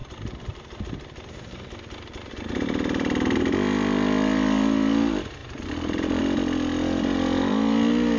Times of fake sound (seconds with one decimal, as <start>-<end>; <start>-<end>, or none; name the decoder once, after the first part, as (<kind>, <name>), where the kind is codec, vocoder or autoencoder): 0.0-3.4 (vocoder, BigVGAN v2); 5.4-6.2